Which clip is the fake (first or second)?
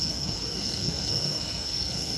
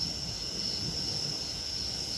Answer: first